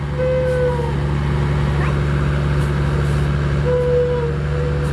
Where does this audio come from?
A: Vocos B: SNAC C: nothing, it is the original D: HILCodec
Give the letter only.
C